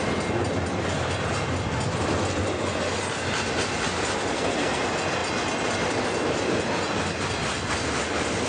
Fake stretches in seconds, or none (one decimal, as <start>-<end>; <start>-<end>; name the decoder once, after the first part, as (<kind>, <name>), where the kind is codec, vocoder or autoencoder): 4.3-4.8 (codec, SNAC)